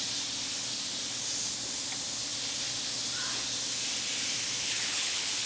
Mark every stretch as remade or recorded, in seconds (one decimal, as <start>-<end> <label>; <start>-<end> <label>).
0.0-4.6 recorded; 4.6-5.5 remade